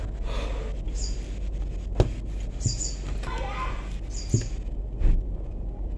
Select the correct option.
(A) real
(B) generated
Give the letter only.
A